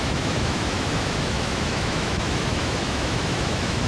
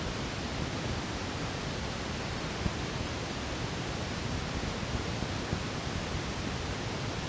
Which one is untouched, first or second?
second